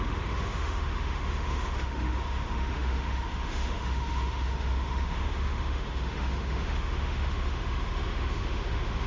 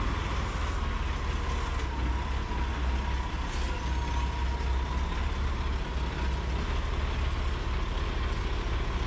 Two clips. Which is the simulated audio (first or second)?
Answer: first